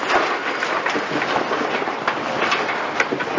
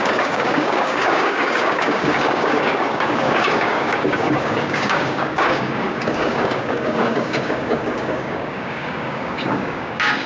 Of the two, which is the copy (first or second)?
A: second